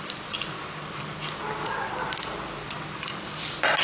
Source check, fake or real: real